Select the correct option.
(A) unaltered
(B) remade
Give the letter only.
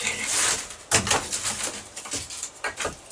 A